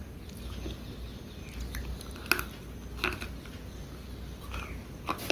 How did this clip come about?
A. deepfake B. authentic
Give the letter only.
B